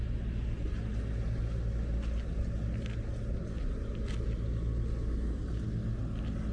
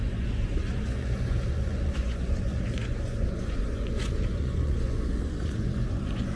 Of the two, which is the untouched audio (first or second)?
first